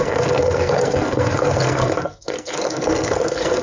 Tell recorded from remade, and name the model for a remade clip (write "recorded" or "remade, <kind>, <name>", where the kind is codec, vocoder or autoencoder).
remade, codec, SNAC